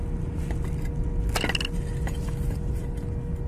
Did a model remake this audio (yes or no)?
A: no